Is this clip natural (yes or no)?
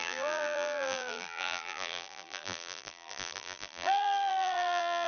no